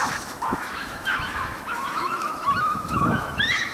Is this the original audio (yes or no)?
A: no